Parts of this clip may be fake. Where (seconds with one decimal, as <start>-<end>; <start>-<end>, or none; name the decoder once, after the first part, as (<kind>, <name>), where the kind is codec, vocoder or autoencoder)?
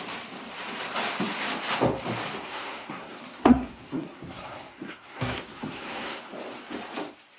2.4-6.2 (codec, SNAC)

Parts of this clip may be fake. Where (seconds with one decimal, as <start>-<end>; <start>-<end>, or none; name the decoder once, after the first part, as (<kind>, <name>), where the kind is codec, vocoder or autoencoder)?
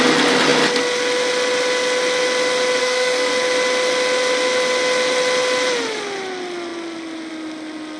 2.8-3.3 (codec, SNAC)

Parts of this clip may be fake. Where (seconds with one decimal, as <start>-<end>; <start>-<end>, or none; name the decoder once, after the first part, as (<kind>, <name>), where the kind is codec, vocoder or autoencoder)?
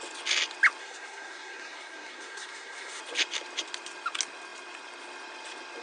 0.8-3.0 (codec, SNAC)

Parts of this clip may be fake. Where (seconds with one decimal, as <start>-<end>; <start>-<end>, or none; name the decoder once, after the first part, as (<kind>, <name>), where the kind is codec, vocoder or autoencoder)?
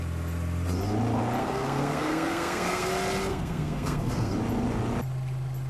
1.4-2.9 (codec, SNAC); 3.3-4.3